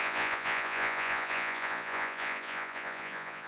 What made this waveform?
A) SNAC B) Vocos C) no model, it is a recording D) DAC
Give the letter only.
B